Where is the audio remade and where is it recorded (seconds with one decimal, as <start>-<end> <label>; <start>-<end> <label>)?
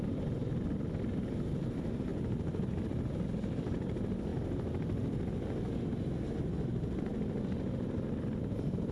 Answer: 0.0-8.9 recorded